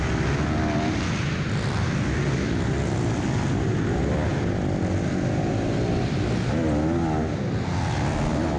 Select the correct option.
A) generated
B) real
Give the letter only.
B